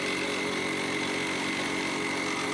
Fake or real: real